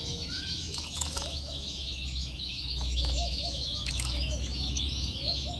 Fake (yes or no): yes